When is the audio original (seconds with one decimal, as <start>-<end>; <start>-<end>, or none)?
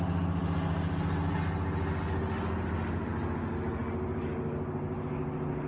0.0-5.7